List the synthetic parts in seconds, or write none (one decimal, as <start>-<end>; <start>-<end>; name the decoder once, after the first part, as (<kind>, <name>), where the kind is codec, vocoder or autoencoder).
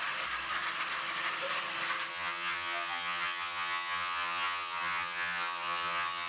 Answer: 2.1-6.3 (vocoder, HiFi-GAN)